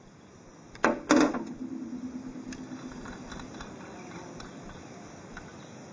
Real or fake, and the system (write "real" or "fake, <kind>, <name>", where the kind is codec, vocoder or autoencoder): real